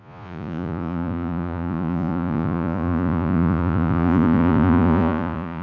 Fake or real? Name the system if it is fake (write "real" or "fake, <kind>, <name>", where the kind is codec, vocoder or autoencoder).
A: fake, vocoder, Vocos